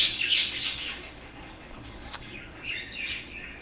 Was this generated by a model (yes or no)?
yes